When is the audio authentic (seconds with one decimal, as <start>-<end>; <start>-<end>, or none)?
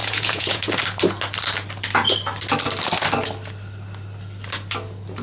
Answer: 0.7-5.2